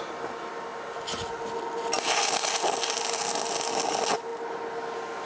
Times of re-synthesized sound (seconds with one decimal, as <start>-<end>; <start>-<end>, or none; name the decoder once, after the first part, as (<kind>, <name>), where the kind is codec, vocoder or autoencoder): none